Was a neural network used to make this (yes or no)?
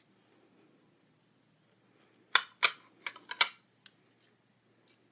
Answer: no